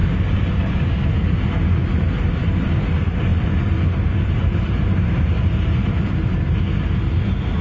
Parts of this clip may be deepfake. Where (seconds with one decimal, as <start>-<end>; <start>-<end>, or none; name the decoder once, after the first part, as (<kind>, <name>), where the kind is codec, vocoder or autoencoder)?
0.0-0.7 (vocoder, BigVGAN v2); 3.3-6.6